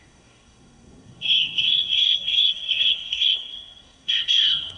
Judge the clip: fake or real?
fake